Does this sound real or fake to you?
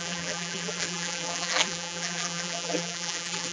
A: fake